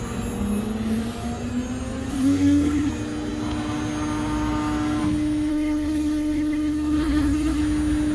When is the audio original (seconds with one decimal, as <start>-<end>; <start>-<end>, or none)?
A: 0.0-2.1; 2.9-5.5; 7.6-8.1